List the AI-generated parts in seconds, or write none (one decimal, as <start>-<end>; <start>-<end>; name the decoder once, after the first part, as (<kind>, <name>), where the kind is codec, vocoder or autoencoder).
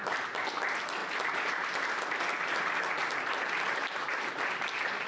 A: none